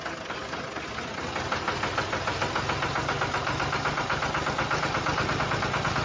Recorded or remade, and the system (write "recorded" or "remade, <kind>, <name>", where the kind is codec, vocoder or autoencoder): recorded